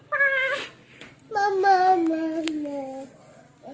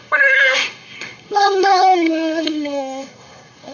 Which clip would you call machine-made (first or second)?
second